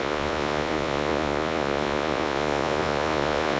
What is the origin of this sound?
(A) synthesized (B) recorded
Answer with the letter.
A